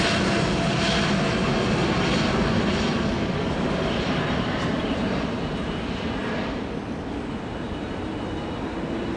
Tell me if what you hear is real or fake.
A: real